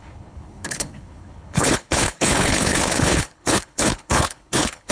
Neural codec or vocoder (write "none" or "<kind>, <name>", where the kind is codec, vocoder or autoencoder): codec, HILCodec